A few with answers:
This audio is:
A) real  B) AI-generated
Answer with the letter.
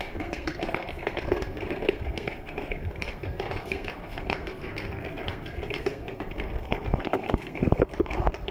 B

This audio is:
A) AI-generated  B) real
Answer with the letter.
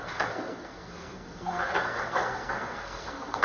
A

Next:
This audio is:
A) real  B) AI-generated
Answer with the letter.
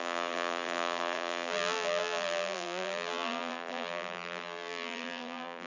B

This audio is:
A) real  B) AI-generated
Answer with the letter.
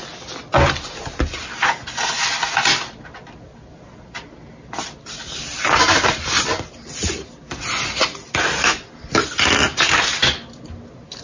A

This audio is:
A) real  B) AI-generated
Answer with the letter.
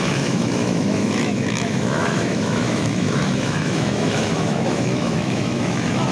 B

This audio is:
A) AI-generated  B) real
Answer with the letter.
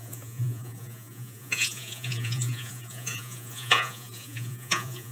A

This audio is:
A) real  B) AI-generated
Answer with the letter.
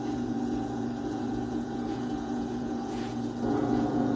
B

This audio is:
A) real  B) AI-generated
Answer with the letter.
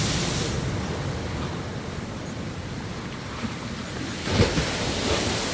A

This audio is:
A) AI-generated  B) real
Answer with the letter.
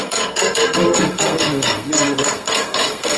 A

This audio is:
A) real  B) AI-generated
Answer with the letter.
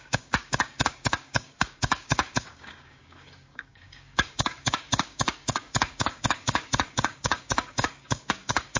B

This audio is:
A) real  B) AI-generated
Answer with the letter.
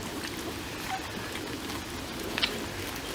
A